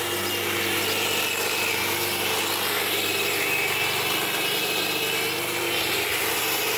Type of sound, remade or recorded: recorded